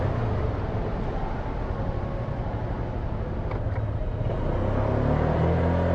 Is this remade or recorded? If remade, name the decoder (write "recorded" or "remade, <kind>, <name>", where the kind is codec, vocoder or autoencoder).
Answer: recorded